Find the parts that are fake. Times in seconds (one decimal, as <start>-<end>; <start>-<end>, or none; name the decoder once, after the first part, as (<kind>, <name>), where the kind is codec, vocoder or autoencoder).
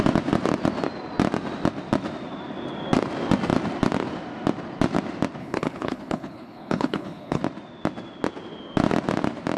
5.4-7.4 (codec, HILCodec)